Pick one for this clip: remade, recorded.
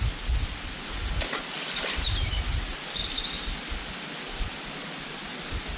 recorded